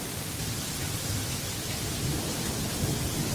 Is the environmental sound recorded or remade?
recorded